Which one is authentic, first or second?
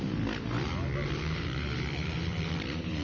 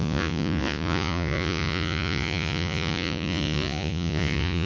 first